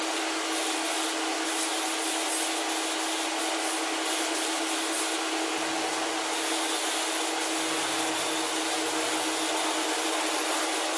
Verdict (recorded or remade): recorded